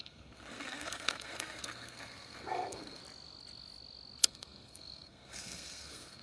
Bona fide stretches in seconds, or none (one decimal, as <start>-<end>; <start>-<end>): 3.0-4.2